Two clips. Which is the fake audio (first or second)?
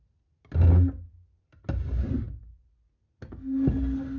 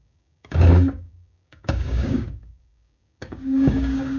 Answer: second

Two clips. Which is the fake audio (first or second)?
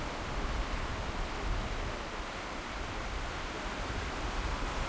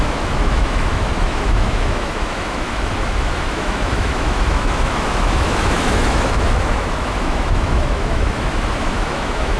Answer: second